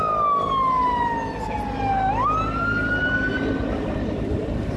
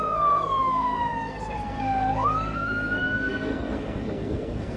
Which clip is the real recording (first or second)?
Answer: first